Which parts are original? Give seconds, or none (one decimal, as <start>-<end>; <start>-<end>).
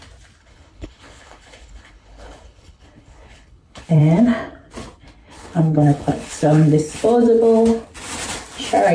0.0-0.4; 4.0-5.2; 7.0-8.9